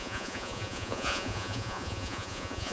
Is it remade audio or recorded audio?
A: remade